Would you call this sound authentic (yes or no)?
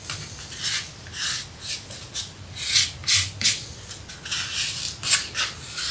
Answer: yes